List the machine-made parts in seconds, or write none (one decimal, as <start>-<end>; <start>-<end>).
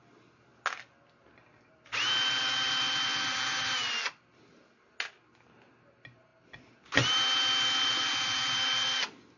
none